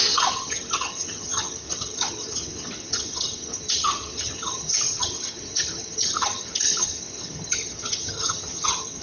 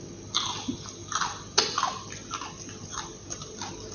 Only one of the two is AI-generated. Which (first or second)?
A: first